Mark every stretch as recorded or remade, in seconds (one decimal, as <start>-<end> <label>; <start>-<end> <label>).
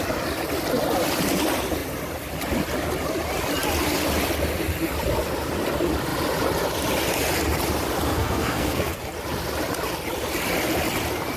0.0-8.1 recorded; 8.1-9.0 remade; 9.0-11.4 recorded